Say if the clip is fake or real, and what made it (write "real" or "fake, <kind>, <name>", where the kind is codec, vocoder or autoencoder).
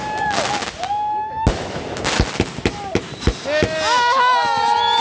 real